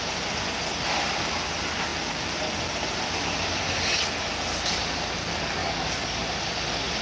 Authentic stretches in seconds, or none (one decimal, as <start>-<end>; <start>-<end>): 0.0-5.6; 6.2-7.0

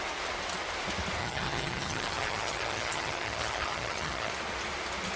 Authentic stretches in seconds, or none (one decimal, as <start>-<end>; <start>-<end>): 0.0-1.2; 4.3-5.2

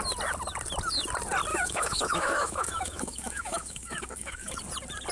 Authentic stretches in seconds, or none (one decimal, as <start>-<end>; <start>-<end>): 0.0-1.5; 4.6-5.1

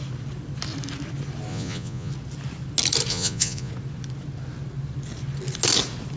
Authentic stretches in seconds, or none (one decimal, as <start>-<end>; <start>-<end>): 0.0-1.5; 2.1-3.1; 3.7-6.2

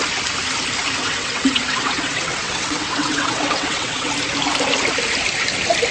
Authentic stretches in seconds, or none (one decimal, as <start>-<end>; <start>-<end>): 0.0-1.0; 4.1-5.9

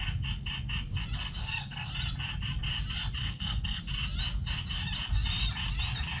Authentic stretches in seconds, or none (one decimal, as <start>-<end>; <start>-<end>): 0.0-1.4; 1.9-3.2; 3.8-6.2

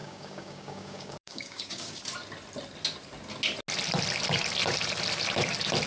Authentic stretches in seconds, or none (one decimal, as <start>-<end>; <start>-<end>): 2.0-5.9

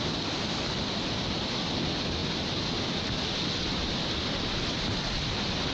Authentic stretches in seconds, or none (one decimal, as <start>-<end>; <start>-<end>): 0.0-5.7